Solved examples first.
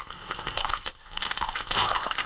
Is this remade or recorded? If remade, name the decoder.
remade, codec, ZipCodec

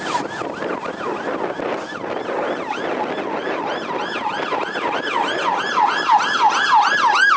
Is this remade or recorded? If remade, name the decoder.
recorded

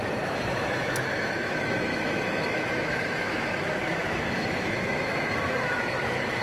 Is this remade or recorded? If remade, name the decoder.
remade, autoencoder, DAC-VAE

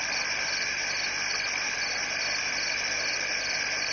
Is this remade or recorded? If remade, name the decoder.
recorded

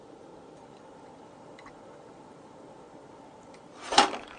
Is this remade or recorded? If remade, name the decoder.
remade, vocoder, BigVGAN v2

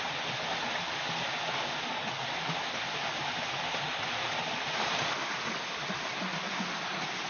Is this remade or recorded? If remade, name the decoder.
recorded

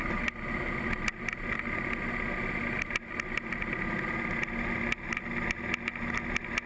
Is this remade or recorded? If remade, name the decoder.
recorded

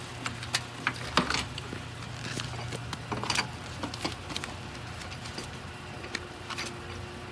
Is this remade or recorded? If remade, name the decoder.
recorded